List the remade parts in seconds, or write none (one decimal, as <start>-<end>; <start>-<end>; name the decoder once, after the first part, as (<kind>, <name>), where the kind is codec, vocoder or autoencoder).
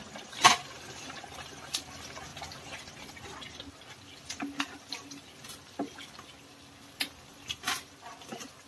none